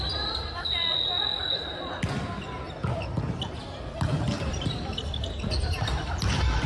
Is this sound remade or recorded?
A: remade